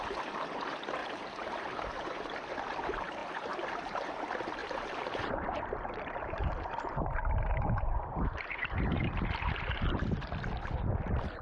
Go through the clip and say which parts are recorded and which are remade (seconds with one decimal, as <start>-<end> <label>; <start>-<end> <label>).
0.0-1.0 recorded; 1.0-2.3 remade; 2.3-3.2 recorded; 3.2-4.1 remade; 4.1-4.6 recorded; 4.6-9.1 remade; 9.1-11.4 recorded